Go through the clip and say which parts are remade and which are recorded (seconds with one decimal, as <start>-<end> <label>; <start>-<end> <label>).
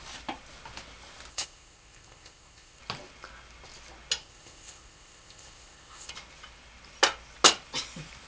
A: 0.0-1.3 recorded; 1.3-2.8 remade; 2.8-4.2 recorded; 4.2-6.1 remade; 6.1-8.3 recorded